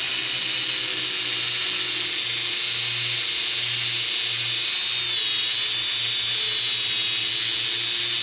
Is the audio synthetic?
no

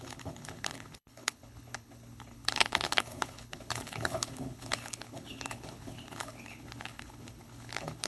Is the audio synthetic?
yes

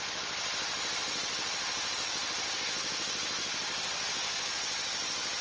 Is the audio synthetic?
no